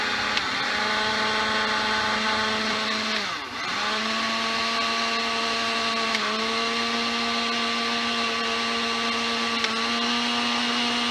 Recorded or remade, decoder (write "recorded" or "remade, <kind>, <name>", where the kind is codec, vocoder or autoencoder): recorded